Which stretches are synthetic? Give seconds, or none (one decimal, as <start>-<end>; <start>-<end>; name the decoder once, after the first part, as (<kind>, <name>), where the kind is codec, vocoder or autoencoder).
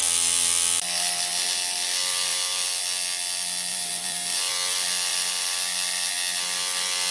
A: 2.3-2.8 (vocoder, BigVGAN v2); 3.7-4.5; 5.1-6.1